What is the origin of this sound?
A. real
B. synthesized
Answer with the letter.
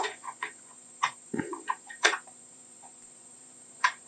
B